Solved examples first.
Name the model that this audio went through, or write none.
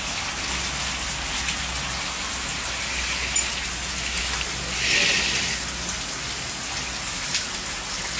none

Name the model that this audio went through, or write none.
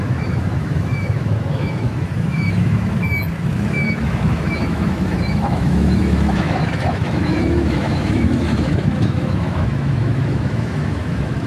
autoencoder, DAC-VAE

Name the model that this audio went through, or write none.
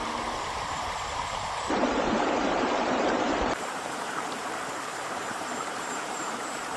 vocoder, BigVGAN v2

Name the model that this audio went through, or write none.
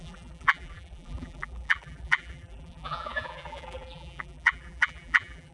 vocoder, BigVGAN v2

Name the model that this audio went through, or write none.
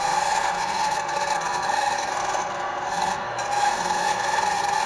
codec, SNAC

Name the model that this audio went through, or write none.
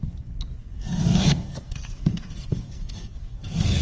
codec, SNAC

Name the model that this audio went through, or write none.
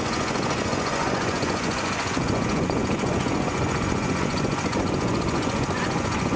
vocoder, Vocos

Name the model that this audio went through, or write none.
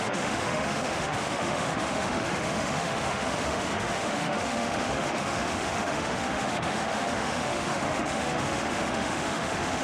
autoencoder, DAC-VAE